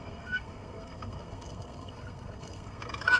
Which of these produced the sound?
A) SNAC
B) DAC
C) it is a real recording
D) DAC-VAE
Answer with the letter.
A